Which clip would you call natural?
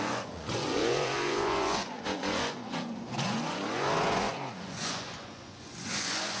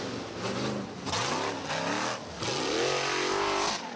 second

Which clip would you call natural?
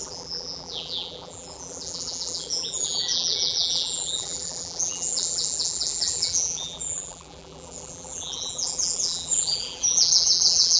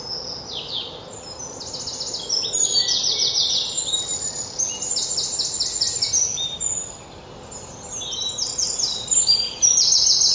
second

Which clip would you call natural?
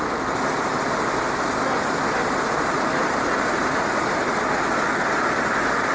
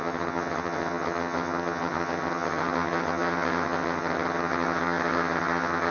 first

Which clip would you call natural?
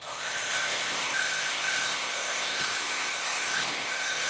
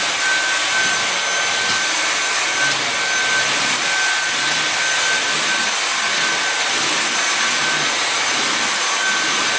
second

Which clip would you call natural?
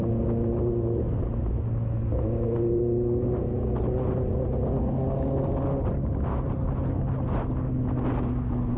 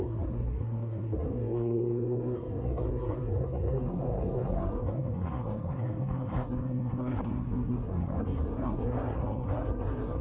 first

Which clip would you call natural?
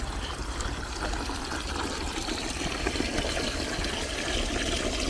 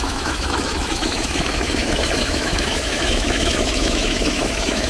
first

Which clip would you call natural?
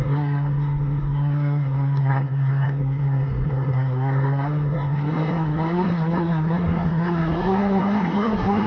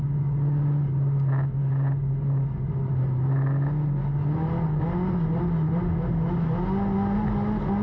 second